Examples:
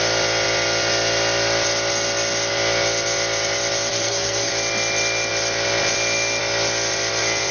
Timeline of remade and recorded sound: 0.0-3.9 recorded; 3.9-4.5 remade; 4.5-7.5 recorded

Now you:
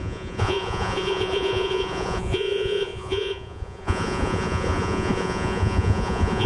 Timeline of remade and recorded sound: 0.0-6.5 remade

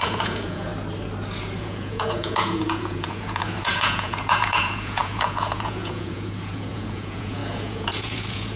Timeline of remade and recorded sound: 0.0-0.7 remade; 0.7-1.6 recorded; 1.6-8.6 remade